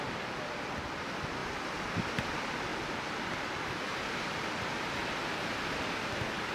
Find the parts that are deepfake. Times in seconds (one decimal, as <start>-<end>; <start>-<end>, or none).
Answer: 0.0-1.4; 2.0-2.7; 4.1-5.0